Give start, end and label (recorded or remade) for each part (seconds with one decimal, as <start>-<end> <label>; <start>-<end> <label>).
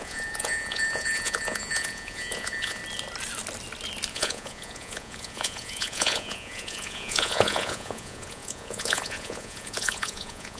0.0-2.8 remade; 2.8-4.1 recorded; 4.1-10.6 remade